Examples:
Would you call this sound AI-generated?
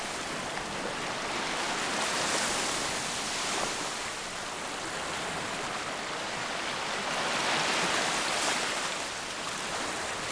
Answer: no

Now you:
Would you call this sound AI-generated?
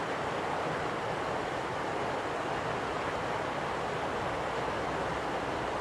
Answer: no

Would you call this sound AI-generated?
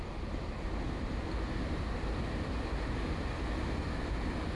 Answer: no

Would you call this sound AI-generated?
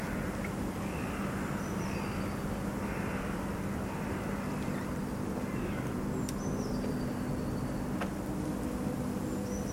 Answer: no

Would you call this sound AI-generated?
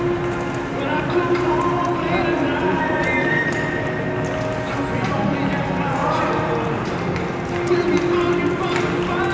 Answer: no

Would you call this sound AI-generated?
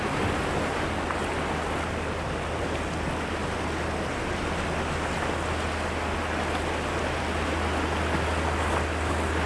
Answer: no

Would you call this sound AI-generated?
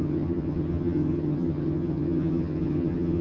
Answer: yes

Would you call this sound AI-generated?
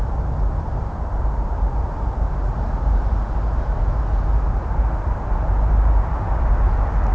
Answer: yes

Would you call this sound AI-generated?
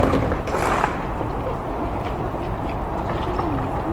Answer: yes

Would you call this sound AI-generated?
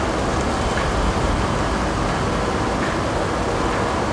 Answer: no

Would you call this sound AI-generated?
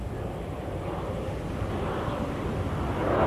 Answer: no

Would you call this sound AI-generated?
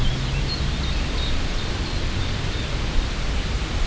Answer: no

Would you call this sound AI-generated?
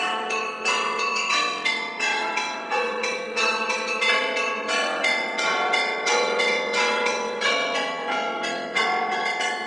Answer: yes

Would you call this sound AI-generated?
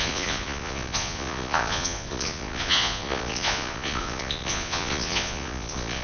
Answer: yes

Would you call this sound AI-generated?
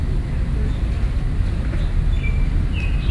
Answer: no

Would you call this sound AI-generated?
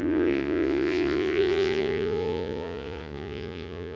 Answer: yes